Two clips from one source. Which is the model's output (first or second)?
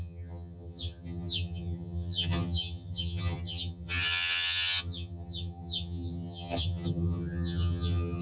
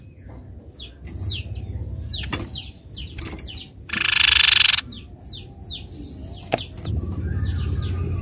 first